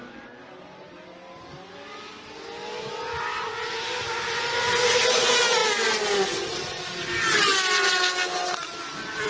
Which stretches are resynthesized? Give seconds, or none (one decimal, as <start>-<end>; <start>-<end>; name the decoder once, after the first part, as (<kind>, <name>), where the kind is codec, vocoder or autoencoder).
none

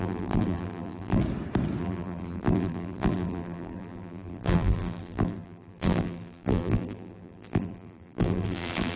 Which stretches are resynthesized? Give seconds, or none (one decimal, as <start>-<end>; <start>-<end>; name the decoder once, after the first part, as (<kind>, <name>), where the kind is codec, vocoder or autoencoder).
0.0-1.2 (vocoder, BigVGAN v2); 1.8-9.0

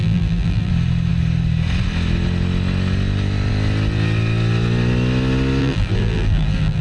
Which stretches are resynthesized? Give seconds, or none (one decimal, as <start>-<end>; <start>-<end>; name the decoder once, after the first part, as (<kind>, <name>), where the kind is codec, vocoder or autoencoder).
0.0-0.7 (vocoder, BigVGAN v2); 5.6-6.8

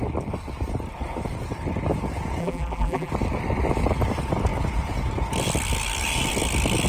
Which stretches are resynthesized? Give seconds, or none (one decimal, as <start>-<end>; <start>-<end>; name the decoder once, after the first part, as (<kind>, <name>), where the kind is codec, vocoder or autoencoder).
2.4-3.1 (vocoder, BigVGAN v2)

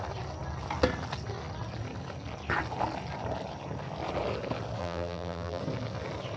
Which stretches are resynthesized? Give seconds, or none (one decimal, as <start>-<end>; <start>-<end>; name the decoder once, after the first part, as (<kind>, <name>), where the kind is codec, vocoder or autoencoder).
4.8-5.6 (vocoder, BigVGAN v2)

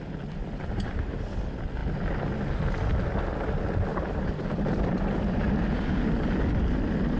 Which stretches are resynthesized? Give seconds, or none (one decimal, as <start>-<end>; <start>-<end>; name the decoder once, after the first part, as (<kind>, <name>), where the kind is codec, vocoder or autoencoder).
0.4-1.3 (vocoder, BigVGAN v2); 3.9-5.4

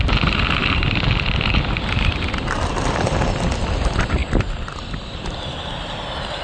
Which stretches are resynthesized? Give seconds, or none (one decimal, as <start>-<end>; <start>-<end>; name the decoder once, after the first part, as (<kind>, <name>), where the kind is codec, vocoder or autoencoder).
0.6-2.5 (vocoder, BigVGAN v2)